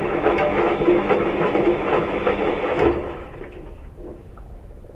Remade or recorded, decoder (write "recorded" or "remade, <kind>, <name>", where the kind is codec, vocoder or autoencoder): remade, autoencoder, DAC-VAE